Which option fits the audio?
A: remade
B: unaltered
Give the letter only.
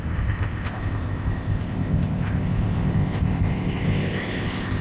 A